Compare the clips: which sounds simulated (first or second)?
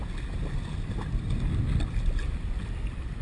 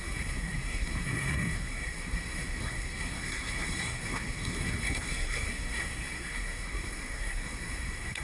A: second